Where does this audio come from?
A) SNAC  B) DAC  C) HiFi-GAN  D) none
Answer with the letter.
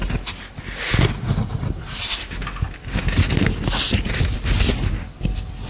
D